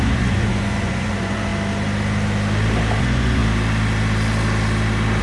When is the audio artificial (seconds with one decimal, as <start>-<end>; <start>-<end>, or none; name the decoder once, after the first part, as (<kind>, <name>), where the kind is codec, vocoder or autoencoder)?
0.0-1.5 (vocoder, Vocos); 3.0-3.4